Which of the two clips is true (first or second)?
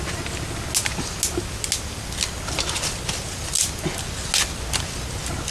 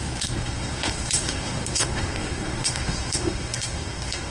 first